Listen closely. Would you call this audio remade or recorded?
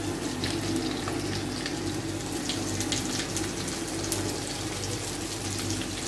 recorded